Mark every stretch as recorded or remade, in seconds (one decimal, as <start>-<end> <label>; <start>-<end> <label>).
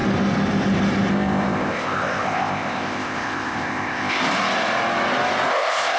0.0-1.1 recorded; 1.1-4.2 remade; 4.2-5.5 recorded; 5.5-6.0 remade